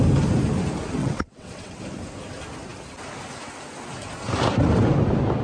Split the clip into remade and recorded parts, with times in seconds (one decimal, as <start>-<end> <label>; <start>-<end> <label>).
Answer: 0.0-1.0 recorded; 1.0-1.8 remade; 1.8-5.4 recorded

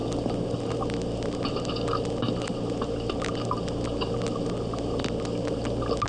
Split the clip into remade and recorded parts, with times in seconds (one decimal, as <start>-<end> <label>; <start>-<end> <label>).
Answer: 0.0-6.1 recorded